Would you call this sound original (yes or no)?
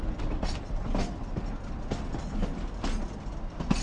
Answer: yes